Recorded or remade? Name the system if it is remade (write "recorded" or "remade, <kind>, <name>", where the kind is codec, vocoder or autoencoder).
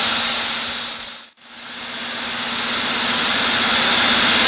recorded